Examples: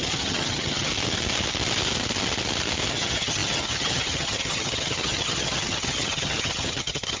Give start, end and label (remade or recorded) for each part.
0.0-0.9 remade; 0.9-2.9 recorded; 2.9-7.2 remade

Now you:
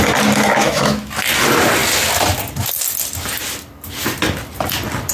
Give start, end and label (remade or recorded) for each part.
0.0-0.5 recorded; 0.5-1.1 remade; 1.1-5.1 recorded